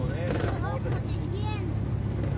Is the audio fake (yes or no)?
no